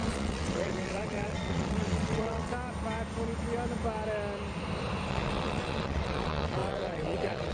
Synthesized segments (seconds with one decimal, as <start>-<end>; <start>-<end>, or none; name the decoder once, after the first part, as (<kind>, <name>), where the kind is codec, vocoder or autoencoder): 0.0-2.5 (vocoder, WaveNeXt); 5.1-7.5